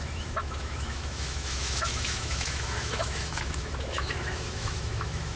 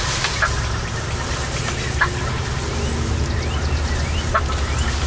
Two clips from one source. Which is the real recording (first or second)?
second